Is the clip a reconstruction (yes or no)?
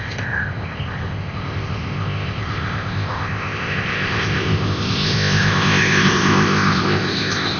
yes